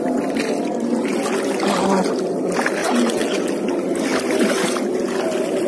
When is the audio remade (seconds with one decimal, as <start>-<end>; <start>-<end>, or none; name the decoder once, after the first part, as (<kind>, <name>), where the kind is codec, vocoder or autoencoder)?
2.8-3.5 (vocoder, WaveNeXt)